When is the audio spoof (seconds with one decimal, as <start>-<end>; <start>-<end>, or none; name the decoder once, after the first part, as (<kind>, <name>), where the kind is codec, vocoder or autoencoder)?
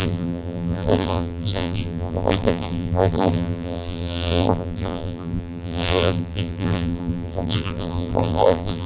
0.0-8.9 (vocoder, BigVGAN v2)